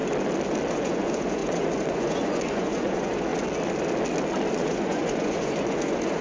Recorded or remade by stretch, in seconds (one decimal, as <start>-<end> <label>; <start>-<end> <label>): 0.0-0.7 recorded; 0.7-3.3 remade; 3.3-4.5 recorded; 4.5-6.2 remade